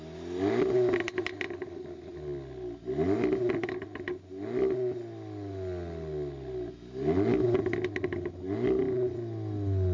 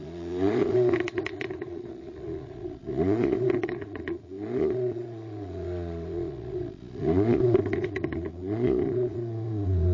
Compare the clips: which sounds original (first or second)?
first